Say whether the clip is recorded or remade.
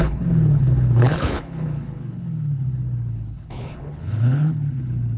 remade